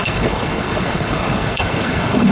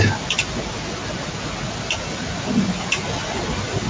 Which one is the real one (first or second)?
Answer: second